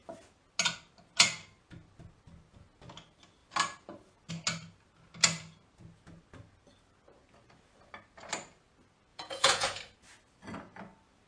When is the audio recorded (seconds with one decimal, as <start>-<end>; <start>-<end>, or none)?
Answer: 0.0-9.1; 9.8-11.3